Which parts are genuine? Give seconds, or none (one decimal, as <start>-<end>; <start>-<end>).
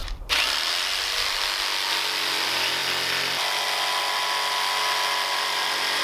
1.4-6.0